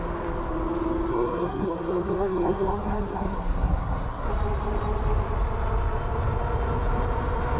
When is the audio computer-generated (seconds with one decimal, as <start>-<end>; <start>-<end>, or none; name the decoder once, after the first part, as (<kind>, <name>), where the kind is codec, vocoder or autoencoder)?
1.1-4.3 (codec, SNAC)